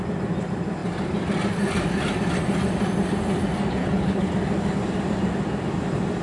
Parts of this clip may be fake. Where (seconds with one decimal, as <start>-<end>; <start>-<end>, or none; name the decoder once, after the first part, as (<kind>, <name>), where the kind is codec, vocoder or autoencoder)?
3.8-4.3 (codec, HILCodec)